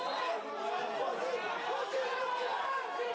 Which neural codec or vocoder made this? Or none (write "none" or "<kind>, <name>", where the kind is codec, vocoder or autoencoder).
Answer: vocoder, BigVGAN v2